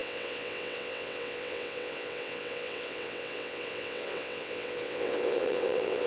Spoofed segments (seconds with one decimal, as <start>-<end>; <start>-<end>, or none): 0.0-6.1